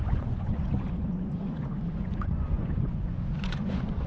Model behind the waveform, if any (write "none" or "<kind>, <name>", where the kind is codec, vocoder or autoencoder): vocoder, Vocos